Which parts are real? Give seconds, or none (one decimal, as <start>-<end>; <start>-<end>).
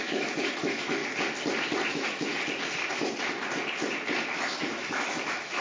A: 1.0-1.9; 2.3-4.3